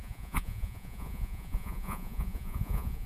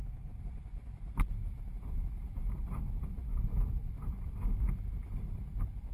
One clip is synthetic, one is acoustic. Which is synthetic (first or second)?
first